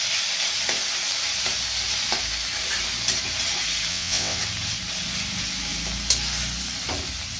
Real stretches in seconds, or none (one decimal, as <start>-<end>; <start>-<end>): 0.0-3.9; 4.4-7.4